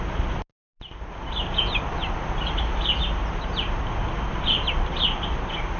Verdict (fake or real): real